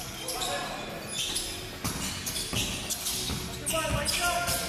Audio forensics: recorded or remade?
recorded